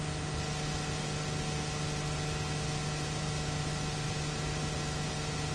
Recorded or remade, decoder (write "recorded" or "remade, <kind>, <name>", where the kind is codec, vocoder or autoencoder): recorded